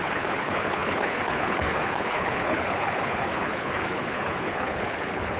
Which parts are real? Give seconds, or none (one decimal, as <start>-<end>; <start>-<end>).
none